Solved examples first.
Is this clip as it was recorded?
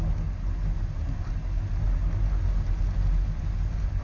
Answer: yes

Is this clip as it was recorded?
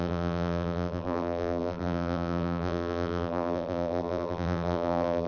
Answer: no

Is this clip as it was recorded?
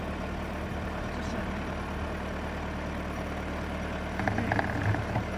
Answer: yes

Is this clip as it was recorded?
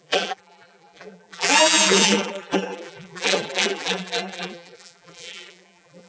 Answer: no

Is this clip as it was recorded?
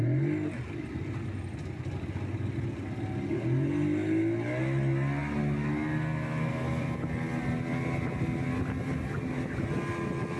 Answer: yes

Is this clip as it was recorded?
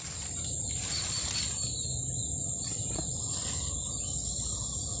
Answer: yes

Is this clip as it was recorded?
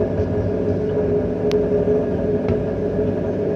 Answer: yes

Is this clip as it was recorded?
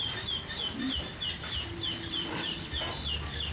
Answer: yes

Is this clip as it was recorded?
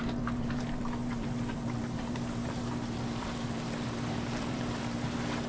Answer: no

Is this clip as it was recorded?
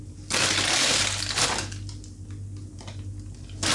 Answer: yes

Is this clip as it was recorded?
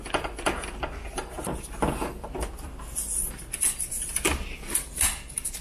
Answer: yes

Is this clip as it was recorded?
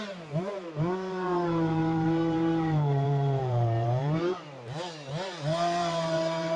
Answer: no